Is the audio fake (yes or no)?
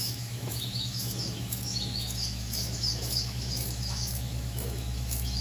yes